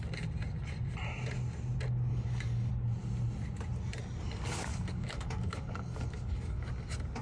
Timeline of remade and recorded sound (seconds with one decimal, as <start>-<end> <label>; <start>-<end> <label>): 0.0-2.1 recorded; 2.1-2.7 remade; 2.7-4.7 recorded; 4.7-6.7 remade; 6.7-7.2 recorded